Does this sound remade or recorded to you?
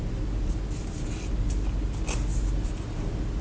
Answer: recorded